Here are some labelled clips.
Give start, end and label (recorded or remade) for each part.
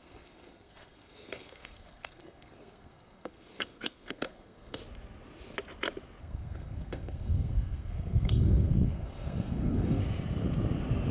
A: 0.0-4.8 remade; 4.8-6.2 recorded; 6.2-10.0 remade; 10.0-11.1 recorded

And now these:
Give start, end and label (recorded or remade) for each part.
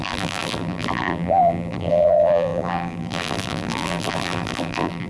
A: 0.0-5.1 remade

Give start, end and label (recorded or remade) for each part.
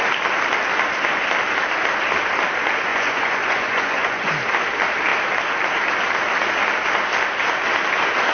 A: 0.0-2.9 recorded; 2.9-4.3 remade; 4.3-8.3 recorded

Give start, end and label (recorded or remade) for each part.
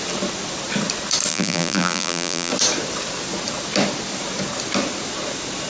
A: 0.0-1.3 recorded; 1.3-2.5 remade; 2.5-5.7 recorded